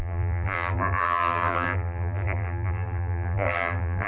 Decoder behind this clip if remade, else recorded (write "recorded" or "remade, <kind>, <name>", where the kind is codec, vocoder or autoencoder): remade, vocoder, BigVGAN v2